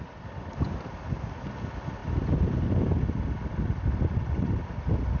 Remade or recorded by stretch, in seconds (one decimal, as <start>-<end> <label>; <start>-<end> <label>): 0.0-5.2 recorded